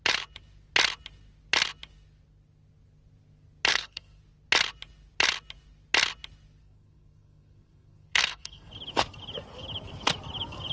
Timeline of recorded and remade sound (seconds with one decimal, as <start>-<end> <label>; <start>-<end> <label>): 0.0-3.7 recorded; 3.7-4.2 remade; 4.2-6.6 recorded; 6.6-8.7 remade; 8.7-10.7 recorded